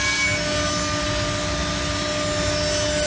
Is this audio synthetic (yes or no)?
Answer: no